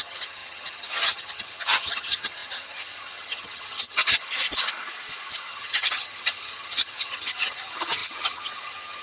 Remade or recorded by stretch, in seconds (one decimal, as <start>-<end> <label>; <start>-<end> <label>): 0.0-4.2 remade; 4.2-5.5 recorded; 5.5-9.0 remade